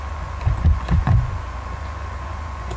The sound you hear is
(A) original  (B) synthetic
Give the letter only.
B